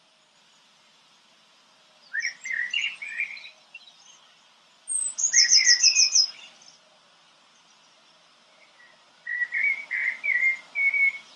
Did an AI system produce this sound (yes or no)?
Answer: no